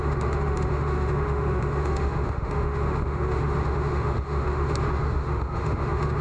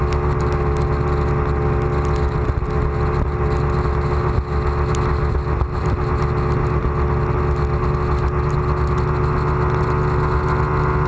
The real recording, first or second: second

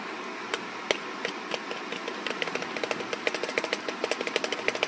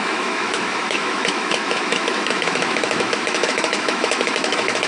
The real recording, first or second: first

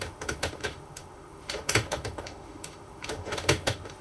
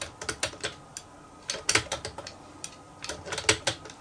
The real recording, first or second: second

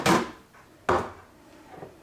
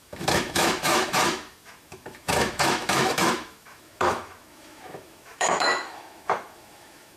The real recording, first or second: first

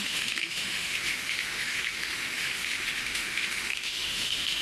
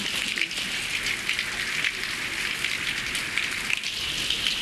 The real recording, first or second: second